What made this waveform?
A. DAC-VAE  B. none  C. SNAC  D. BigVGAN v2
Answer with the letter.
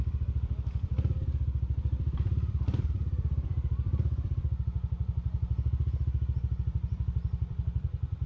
D